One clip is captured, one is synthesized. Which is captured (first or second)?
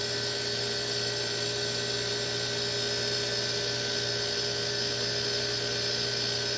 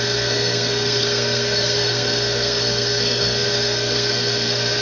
first